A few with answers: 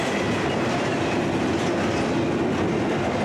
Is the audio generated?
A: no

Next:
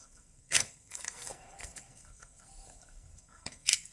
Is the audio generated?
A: yes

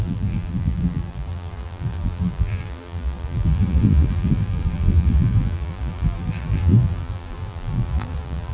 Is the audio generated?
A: yes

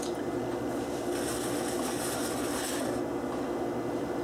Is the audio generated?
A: no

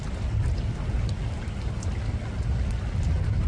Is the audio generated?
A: no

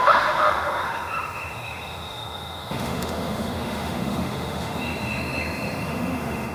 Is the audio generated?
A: yes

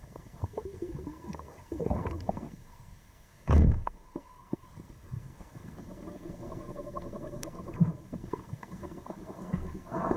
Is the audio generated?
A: yes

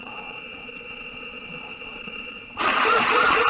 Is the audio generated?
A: yes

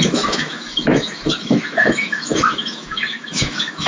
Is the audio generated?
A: yes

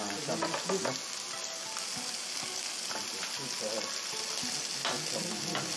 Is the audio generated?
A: no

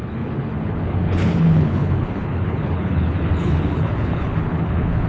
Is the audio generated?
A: yes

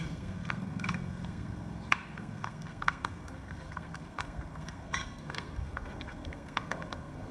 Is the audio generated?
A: yes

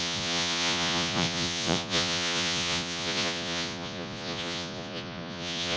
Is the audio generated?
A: yes